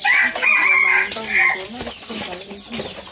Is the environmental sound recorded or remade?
recorded